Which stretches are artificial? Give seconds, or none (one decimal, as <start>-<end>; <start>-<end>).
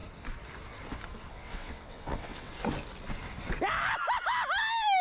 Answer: 1.3-2.5